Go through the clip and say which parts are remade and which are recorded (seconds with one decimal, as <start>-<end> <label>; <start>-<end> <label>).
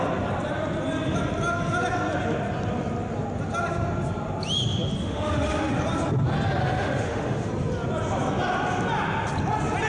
0.0-5.0 recorded; 5.0-5.7 remade; 5.7-6.6 recorded; 6.6-7.5 remade; 7.5-9.9 recorded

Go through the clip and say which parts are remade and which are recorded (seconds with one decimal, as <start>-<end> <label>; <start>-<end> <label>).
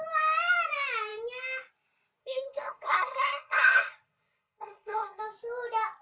0.0-2.2 recorded; 2.2-5.2 remade; 5.2-6.0 recorded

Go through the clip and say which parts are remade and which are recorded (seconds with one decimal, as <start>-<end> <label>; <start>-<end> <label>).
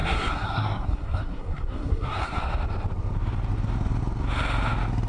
0.0-2.4 remade; 2.4-5.1 recorded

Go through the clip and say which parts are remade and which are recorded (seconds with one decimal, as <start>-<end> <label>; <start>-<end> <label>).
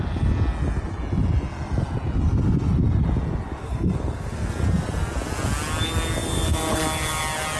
0.0-3.6 recorded; 3.6-4.5 remade; 4.5-7.6 recorded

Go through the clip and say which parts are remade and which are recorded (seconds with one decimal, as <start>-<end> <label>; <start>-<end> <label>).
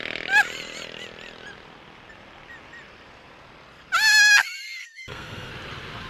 0.0-4.8 recorded; 4.8-5.5 remade; 5.5-6.1 recorded